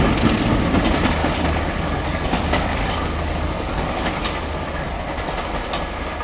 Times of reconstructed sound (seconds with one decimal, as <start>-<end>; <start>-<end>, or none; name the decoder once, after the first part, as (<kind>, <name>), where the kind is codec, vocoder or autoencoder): 1.2-4.9 (codec, DAC)